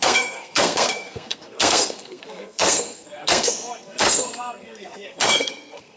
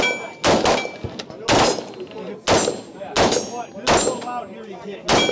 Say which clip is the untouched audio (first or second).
second